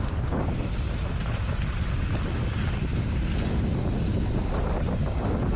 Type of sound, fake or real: real